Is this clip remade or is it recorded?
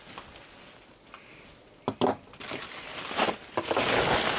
recorded